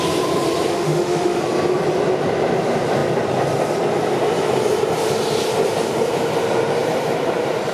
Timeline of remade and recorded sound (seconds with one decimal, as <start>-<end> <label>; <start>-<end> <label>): 0.0-0.7 recorded; 0.7-1.4 remade; 1.4-7.7 recorded